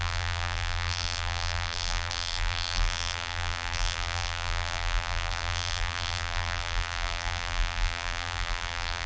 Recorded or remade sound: remade